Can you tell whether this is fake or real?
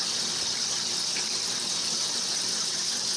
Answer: real